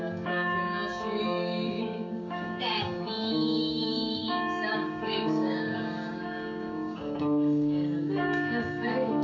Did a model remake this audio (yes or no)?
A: yes